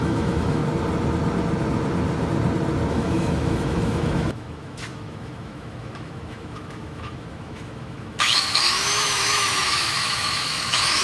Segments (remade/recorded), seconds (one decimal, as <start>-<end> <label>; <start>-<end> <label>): 0.0-0.6 remade; 0.6-2.9 recorded; 2.9-11.0 remade